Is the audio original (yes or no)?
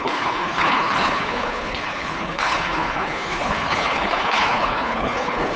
no